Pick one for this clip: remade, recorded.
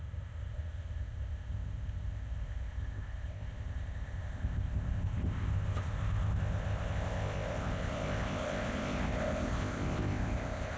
remade